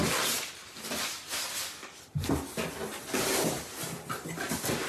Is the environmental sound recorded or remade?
recorded